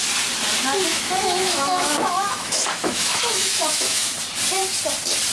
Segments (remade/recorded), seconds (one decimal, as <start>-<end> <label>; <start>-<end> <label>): 0.0-0.9 recorded; 0.9-4.1 remade; 4.1-5.3 recorded